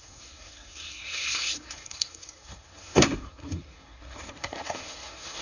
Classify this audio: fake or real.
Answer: fake